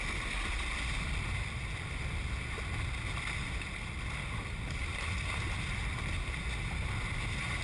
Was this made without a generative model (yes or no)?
yes